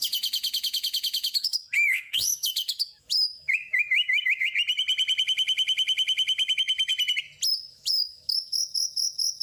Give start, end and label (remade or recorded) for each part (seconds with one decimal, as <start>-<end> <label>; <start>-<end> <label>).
0.0-4.5 remade; 4.5-5.2 recorded; 5.2-6.9 remade; 6.9-7.7 recorded; 7.7-9.4 remade